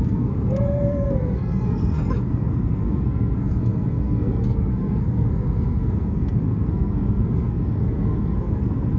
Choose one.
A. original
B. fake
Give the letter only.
B